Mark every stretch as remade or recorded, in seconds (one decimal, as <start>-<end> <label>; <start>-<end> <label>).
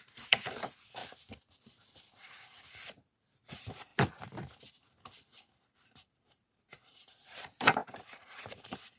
0.0-1.0 remade; 1.0-1.5 recorded; 1.5-3.9 remade; 3.9-5.7 recorded; 5.7-9.0 remade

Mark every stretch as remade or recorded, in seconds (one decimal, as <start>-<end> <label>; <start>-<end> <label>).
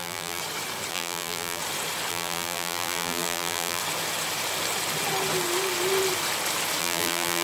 0.0-0.4 remade; 0.4-0.9 recorded; 0.9-1.6 remade; 1.6-2.1 recorded; 2.1-3.8 remade; 3.8-6.8 recorded; 6.8-7.4 remade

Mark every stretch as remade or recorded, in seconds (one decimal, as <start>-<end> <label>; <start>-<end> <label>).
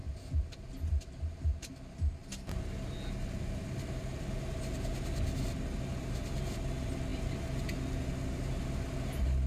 0.0-9.5 recorded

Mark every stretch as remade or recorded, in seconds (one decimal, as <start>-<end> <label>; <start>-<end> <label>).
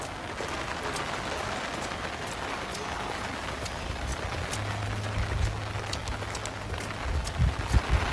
0.0-8.1 recorded